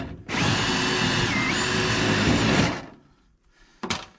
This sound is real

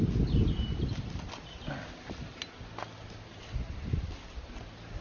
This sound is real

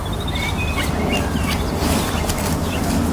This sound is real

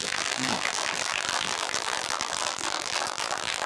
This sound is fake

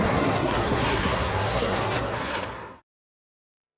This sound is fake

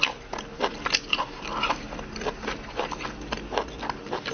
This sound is real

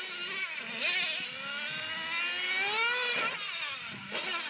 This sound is real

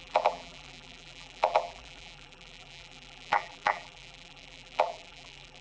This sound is fake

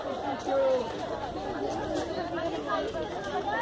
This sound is real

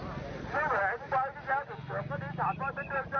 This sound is real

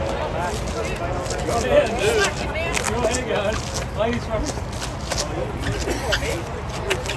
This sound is real